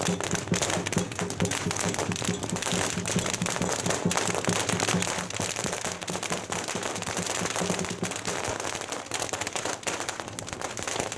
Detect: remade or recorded recorded